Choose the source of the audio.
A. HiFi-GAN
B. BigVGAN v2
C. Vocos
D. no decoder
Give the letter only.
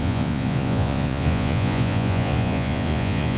C